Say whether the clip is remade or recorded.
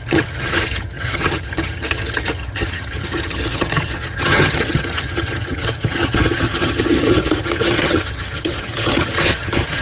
remade